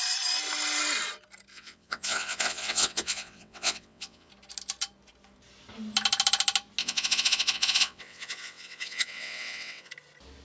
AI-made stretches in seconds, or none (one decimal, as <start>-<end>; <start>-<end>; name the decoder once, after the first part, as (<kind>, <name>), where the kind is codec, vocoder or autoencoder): 1.5-4.3 (vocoder, WaveNeXt); 6.8-9.9